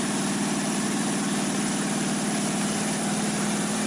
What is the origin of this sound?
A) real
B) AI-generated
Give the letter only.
B